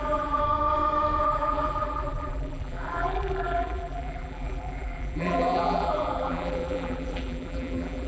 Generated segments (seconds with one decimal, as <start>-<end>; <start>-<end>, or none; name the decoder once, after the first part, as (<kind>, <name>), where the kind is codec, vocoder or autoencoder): 0.0-0.4 (vocoder, BigVGAN v2); 1.2-8.1